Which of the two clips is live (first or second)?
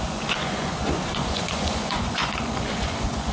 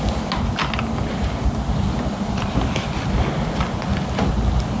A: second